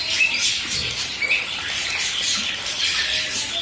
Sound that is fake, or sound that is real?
real